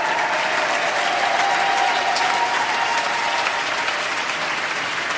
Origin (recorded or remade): recorded